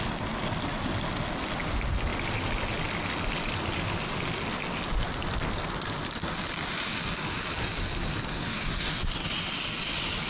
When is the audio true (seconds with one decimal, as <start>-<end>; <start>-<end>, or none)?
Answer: 0.0-8.3; 8.9-10.3